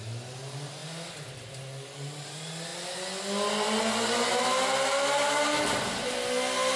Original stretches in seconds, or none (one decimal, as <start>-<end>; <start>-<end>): 0.0-6.8